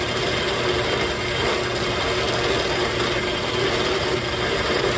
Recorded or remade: recorded